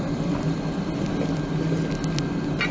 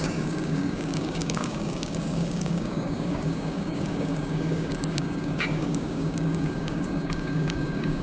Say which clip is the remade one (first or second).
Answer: second